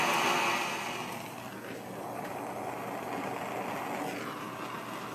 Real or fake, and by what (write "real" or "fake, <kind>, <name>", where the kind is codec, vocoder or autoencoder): real